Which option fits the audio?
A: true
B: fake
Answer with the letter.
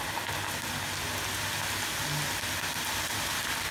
A